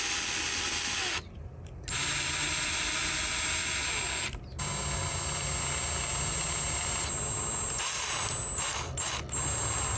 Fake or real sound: real